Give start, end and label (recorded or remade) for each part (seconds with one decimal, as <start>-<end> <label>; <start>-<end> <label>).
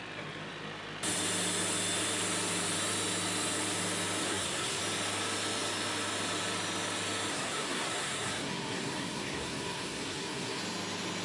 0.0-4.2 recorded; 4.2-4.8 remade; 4.8-7.3 recorded; 7.3-10.6 remade; 10.6-11.2 recorded